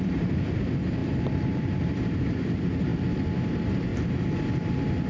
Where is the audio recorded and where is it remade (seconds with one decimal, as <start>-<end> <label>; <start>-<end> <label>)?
0.0-2.9 remade; 2.9-3.5 recorded; 3.5-3.9 remade; 3.9-5.1 recorded